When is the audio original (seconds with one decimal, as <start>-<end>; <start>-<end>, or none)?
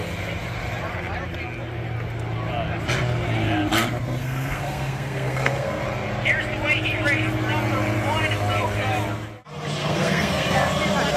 0.0-4.2; 5.8-9.8; 10.7-11.2